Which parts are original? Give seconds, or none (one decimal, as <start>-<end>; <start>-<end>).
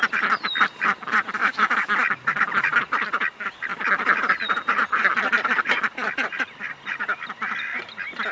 0.0-1.4; 1.9-8.3